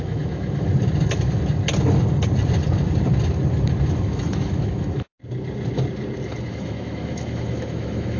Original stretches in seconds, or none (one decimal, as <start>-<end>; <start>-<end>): 0.7-4.0; 5.1-6.5